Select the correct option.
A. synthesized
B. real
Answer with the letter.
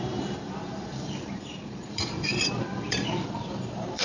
A